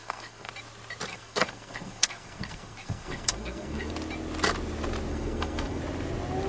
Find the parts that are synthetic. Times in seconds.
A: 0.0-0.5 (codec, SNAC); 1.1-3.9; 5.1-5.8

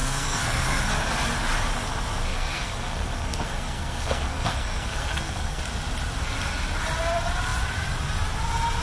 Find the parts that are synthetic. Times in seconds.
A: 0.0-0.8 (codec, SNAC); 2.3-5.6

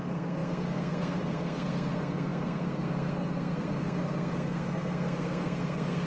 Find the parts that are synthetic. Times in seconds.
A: 0.0-6.1 (codec, SNAC)

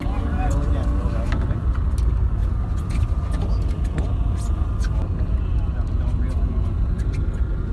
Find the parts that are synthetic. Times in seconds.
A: none